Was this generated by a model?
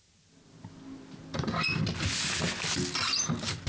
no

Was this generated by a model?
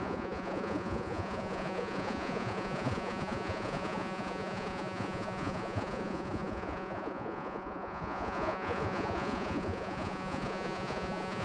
yes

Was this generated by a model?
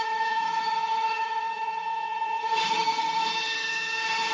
yes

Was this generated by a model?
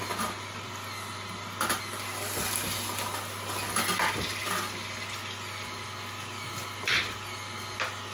no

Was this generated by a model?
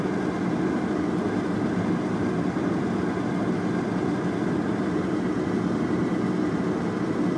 no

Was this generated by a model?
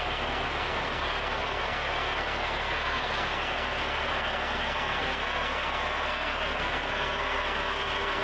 yes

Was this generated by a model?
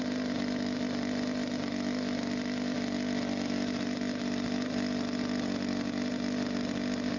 no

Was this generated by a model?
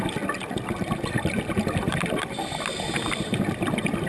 yes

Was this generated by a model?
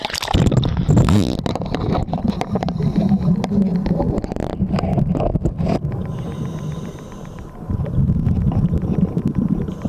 no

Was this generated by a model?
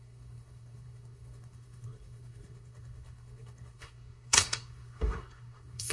yes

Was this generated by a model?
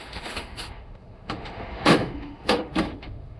yes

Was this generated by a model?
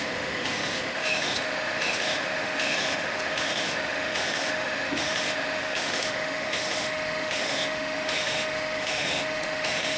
yes